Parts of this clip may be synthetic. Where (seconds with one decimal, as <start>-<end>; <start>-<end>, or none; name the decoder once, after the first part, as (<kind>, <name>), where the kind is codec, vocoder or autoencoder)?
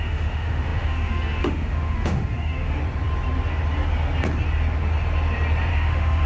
0.0-2.8 (autoencoder, DAC-VAE); 5.7-6.3